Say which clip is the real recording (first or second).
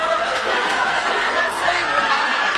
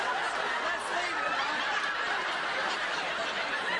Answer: second